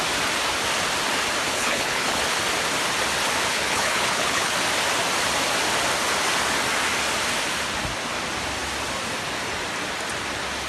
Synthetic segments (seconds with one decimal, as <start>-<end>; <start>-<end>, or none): 1.5-2.2; 3.5-4.5